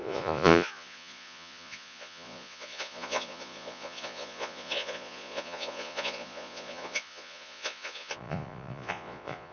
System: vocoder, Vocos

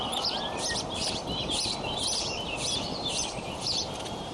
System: vocoder, BigVGAN v2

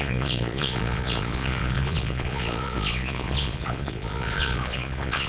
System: vocoder, Vocos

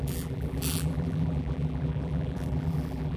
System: vocoder, BigVGAN v2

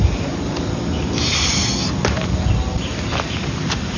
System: none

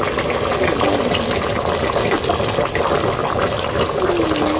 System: none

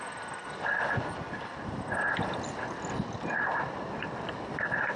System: none